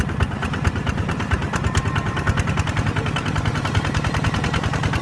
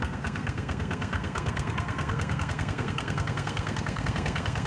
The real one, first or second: first